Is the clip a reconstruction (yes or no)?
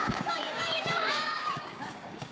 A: yes